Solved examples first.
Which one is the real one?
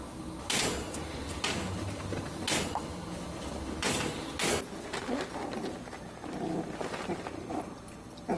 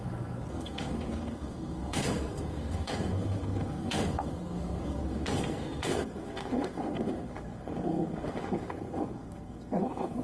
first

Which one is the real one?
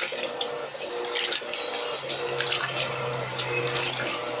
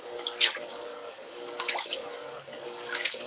first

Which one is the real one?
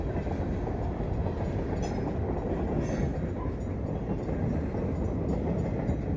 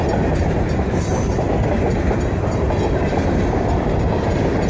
first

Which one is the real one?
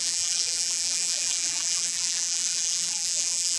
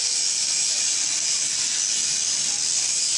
second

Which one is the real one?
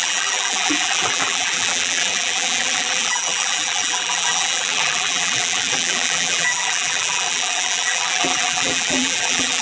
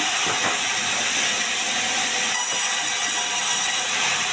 second